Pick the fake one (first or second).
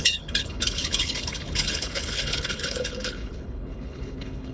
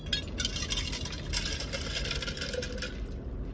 first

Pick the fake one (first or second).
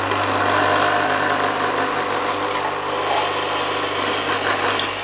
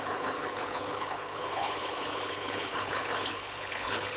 second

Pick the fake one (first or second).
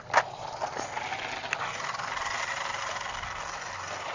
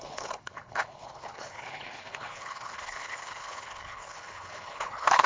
second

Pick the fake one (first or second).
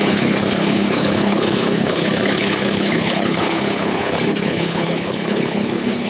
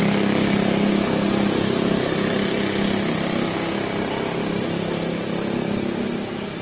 first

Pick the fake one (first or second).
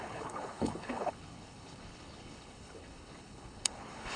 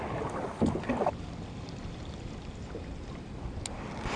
first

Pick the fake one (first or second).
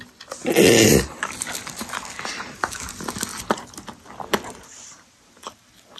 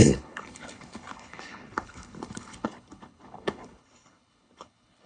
second